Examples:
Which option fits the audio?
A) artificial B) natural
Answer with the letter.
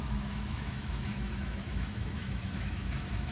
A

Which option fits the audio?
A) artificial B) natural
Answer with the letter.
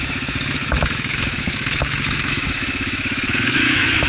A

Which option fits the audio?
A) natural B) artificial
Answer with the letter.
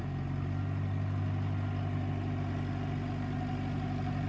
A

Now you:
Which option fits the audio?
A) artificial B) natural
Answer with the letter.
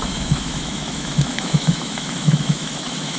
A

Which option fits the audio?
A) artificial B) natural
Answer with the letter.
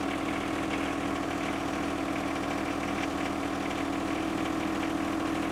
B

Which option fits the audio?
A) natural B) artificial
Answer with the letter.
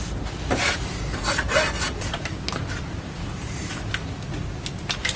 A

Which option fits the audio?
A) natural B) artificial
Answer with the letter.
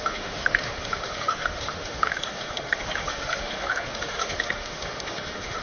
B